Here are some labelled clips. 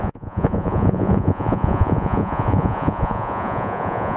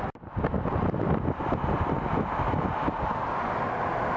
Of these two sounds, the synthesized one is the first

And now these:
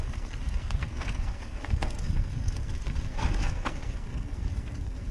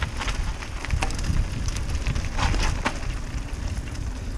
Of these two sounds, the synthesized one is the first